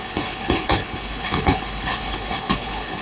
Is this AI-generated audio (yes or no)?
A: yes